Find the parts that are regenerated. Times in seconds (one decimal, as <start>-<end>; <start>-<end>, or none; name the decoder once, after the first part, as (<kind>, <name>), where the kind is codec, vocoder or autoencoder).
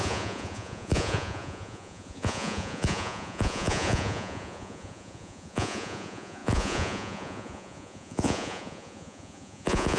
0.0-10.0 (vocoder, Vocos)